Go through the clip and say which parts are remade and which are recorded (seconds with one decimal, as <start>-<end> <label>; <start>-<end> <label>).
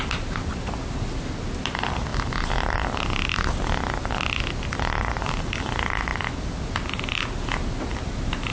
0.0-8.5 recorded